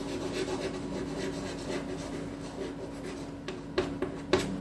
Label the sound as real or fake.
real